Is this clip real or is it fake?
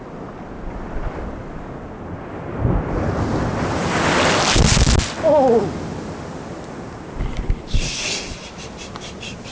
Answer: real